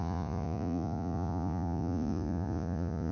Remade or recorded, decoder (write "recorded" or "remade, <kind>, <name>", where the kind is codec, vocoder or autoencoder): remade, vocoder, Vocos